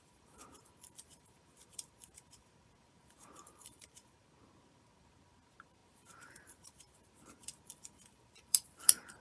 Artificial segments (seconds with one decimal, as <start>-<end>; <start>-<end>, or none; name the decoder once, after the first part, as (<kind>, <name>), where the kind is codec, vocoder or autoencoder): 0.0-9.2 (vocoder, BigVGAN v2)